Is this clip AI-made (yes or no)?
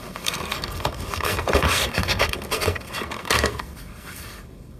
yes